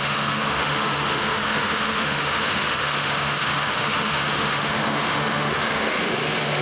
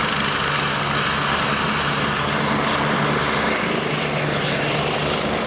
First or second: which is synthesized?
first